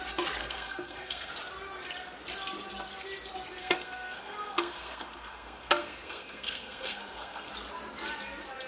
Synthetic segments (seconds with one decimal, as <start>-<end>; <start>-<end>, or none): 0.4-1.3; 3.6-7.5